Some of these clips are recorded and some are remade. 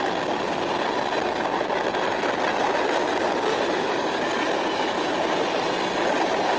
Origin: recorded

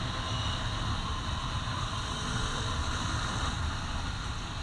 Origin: recorded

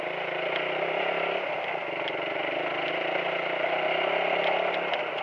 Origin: recorded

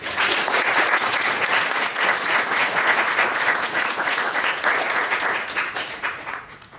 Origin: remade